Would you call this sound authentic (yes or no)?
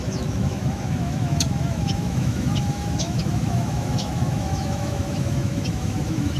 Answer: no